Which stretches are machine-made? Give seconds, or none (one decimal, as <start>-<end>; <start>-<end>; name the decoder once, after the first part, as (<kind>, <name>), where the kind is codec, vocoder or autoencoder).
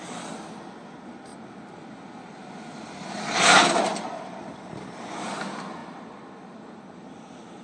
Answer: none